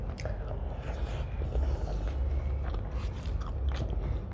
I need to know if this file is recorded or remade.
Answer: recorded